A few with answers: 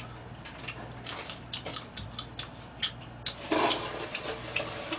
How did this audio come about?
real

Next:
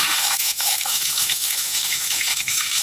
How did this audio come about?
fake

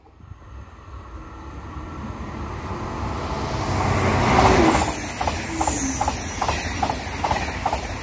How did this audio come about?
real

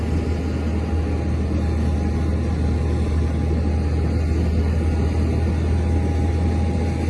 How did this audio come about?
real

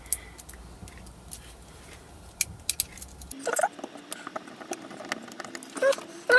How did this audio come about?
real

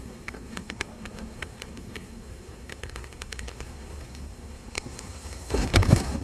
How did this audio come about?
fake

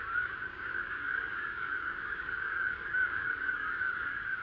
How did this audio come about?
fake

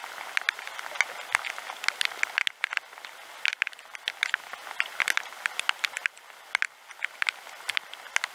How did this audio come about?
real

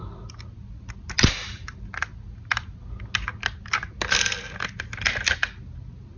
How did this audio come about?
real